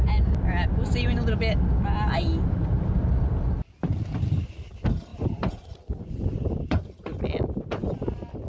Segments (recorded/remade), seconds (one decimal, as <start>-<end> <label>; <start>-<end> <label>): 0.0-5.1 recorded; 5.1-7.2 remade; 7.2-8.5 recorded